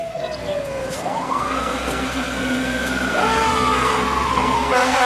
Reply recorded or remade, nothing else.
remade